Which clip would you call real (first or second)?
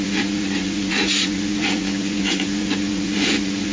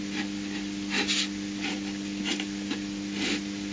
second